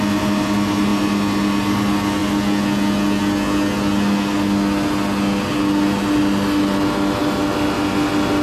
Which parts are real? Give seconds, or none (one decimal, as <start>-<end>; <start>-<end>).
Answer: 0.0-8.4